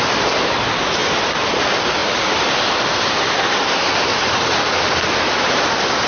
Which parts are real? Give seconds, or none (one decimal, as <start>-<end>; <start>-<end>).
0.0-6.1